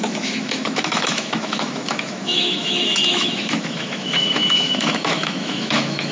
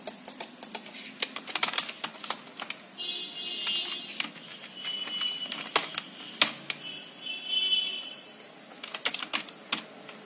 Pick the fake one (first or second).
first